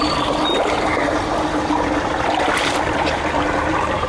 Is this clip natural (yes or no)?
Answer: yes